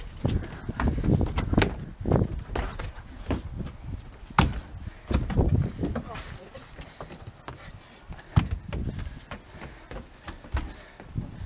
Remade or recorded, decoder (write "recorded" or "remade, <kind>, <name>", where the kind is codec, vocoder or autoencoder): recorded